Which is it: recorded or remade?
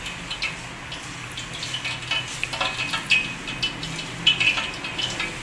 recorded